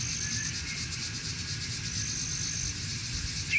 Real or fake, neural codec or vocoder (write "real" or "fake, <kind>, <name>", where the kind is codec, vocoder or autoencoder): real